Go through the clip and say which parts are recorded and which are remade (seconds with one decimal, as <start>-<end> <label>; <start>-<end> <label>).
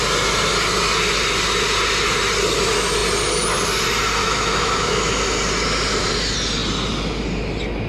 0.0-4.2 recorded; 4.2-5.1 remade; 5.1-7.9 recorded